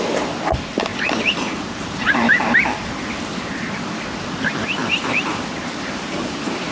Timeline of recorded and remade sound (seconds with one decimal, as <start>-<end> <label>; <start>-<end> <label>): 0.0-0.9 recorded; 0.9-2.6 remade; 2.6-4.8 recorded; 4.8-6.7 remade